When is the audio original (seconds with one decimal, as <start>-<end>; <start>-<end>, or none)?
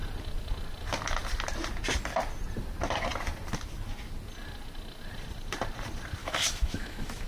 0.0-6.2